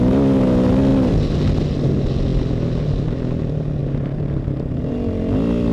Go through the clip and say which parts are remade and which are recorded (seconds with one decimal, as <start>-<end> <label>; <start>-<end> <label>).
0.0-3.8 recorded; 3.8-4.9 remade; 4.9-5.7 recorded